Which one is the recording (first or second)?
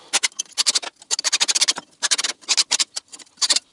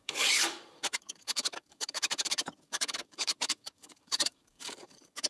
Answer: first